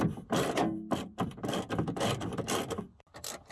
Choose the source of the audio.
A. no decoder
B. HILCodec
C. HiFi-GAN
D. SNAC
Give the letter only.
A